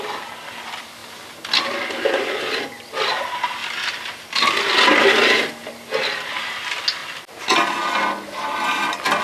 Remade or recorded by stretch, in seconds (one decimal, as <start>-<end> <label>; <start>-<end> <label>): 0.0-9.2 recorded